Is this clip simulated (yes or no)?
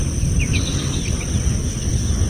no